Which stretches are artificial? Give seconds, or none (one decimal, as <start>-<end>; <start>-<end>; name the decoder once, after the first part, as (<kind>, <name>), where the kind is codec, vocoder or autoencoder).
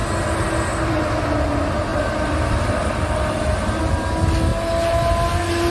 1.9-3.8 (vocoder, BigVGAN v2)